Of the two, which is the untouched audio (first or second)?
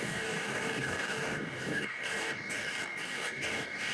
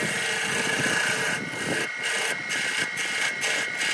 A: second